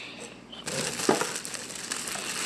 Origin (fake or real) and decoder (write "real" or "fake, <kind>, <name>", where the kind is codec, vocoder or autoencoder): real